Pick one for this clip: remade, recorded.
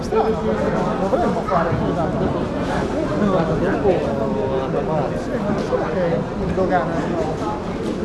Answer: recorded